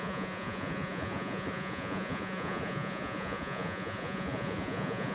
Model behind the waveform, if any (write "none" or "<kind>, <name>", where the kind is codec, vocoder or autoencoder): vocoder, Vocos